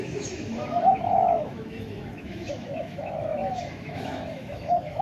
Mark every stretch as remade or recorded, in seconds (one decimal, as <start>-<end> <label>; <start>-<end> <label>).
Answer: 0.0-5.0 remade